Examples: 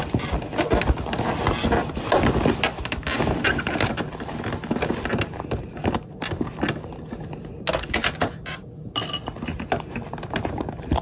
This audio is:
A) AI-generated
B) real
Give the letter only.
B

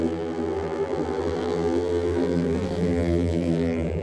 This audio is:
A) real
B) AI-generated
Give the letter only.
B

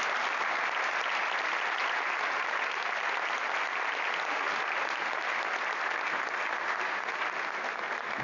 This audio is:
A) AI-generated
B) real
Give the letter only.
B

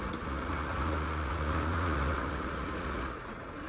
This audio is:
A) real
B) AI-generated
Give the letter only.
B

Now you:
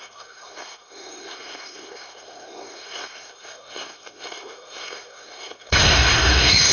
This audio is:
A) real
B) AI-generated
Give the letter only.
B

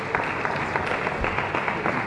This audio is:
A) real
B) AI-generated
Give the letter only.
A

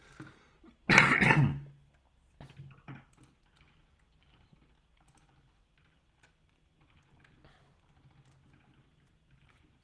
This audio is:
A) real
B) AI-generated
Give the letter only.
A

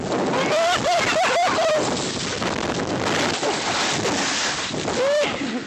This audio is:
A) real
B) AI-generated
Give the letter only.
A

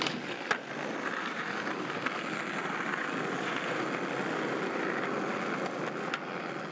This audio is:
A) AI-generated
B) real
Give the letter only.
B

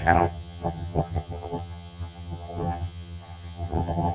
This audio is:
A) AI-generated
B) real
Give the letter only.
A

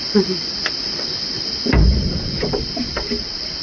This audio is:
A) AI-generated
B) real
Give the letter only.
A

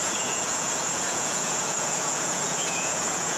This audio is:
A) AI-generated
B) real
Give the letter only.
A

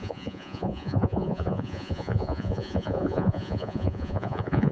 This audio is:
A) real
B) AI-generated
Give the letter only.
B